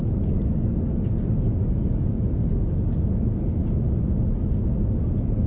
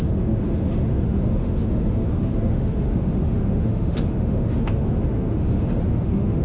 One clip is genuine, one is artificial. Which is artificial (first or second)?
second